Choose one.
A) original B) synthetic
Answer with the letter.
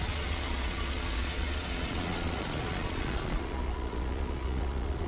B